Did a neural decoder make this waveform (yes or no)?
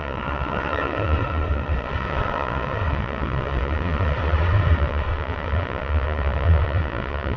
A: yes